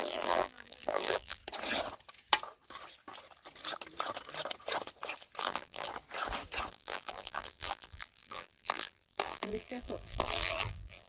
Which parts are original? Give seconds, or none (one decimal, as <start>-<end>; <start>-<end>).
1.4-5.4; 5.9-6.7